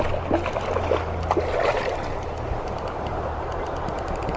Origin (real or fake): real